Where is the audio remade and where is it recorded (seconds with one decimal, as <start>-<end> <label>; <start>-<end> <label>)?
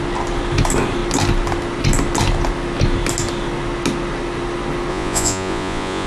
0.0-4.9 recorded; 4.9-6.1 remade